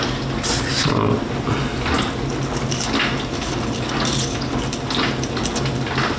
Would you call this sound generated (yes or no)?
no